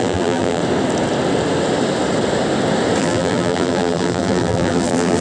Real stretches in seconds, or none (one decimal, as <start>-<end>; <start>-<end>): 0.6-3.0